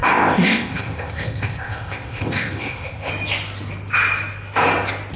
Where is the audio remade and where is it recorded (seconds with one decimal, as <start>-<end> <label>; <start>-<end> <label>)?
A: 0.0-3.1 remade; 3.1-5.2 recorded